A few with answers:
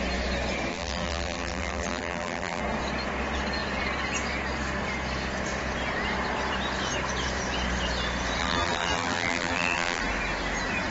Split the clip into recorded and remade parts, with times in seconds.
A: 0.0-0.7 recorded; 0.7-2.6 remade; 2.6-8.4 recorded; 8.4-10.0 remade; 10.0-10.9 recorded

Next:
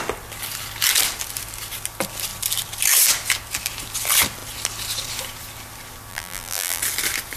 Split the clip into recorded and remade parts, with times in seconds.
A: 0.0-6.1 recorded; 6.1-6.8 remade; 6.8-7.4 recorded

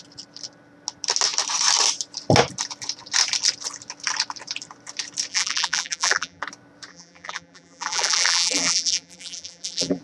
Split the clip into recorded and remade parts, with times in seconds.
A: 0.0-5.3 recorded; 5.3-6.4 remade; 6.4-6.9 recorded; 6.9-10.0 remade